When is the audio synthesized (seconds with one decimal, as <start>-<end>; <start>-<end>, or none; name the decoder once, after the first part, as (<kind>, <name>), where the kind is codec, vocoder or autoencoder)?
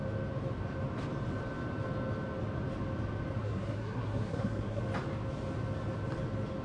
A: 3.4-4.8 (codec, SNAC)